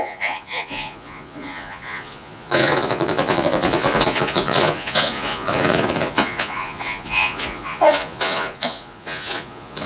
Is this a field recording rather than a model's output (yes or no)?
no